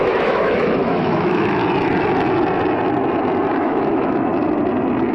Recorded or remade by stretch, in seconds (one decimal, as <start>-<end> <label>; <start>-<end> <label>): 0.0-1.6 remade; 1.6-3.6 recorded; 3.6-4.3 remade; 4.3-5.1 recorded

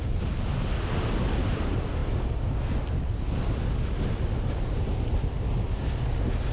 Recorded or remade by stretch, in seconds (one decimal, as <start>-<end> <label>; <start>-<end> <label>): 0.0-6.5 recorded

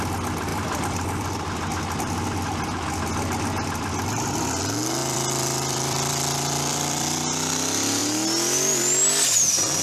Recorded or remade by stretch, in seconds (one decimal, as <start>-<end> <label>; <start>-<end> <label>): 0.0-0.5 recorded; 0.5-1.4 remade; 1.4-5.0 recorded; 5.0-7.5 remade; 7.5-9.8 recorded

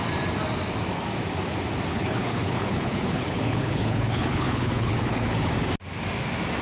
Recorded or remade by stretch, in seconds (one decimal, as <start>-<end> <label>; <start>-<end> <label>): 0.0-1.9 recorded; 1.9-5.5 remade; 5.5-6.6 recorded

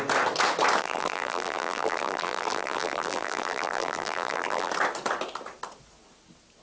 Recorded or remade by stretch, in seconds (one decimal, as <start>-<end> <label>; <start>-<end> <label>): 0.0-0.8 recorded; 0.8-4.7 remade; 4.7-6.6 recorded

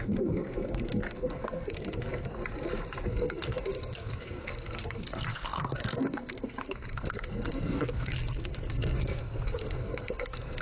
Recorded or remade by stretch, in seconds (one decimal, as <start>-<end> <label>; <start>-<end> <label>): 0.0-2.4 remade; 2.4-3.0 recorded; 3.0-10.6 remade